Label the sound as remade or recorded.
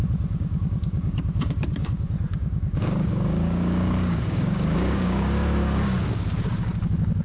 remade